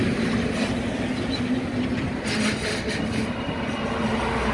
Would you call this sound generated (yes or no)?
no